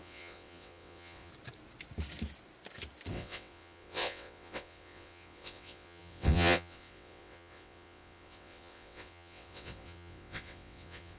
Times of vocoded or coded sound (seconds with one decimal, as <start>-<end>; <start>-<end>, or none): 0.0-1.3; 3.1-11.2